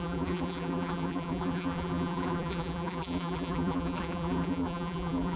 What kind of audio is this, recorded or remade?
remade